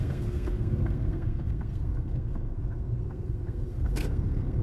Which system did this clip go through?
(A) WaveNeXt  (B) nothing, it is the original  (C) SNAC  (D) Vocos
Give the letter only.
C